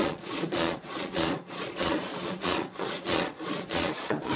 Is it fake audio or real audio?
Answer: fake